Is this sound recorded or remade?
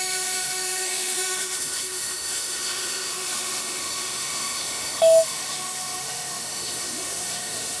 remade